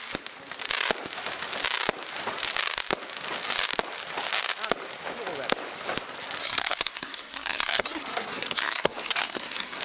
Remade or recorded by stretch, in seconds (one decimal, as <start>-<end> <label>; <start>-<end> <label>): 0.0-6.4 recorded; 6.4-9.8 remade